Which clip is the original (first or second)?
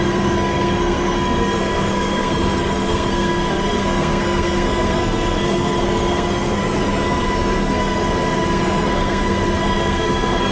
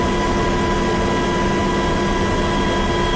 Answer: second